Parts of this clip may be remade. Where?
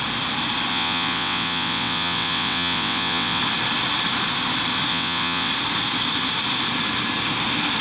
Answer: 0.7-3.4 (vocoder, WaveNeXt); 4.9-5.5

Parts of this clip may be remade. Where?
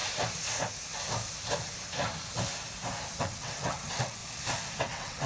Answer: 3.2-4.2 (vocoder, WaveNeXt); 4.8-5.3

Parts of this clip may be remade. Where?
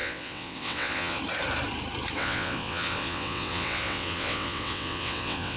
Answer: 0.0-1.2 (vocoder, WaveNeXt); 2.2-5.6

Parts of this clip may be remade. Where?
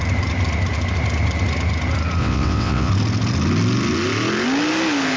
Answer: 2.2-2.9 (vocoder, WaveNeXt)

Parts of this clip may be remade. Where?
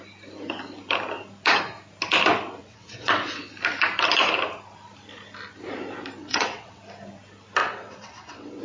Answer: 2.6-3.5 (vocoder, WaveNeXt); 6.2-6.8; 7.6-8.6